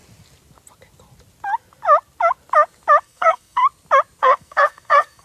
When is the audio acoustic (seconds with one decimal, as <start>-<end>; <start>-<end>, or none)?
0.0-3.0; 3.6-4.2